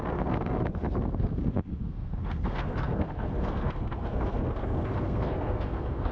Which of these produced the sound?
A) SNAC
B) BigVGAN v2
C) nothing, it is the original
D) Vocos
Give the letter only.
A